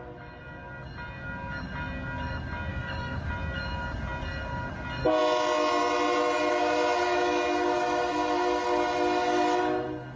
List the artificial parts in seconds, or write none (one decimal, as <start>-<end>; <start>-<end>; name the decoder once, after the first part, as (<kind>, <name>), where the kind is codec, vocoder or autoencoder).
2.7-3.3 (codec, DAC)